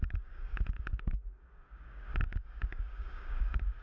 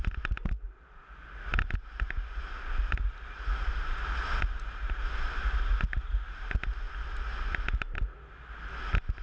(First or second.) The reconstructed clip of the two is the first